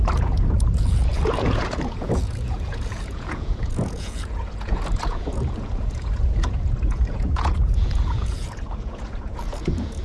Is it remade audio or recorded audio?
remade